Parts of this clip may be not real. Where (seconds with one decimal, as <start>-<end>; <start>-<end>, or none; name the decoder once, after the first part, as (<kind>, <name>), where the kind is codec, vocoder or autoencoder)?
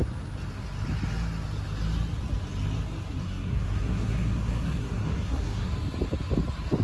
3.2-5.7 (codec, SNAC)